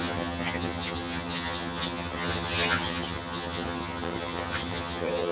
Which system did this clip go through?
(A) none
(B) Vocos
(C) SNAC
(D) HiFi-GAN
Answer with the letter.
D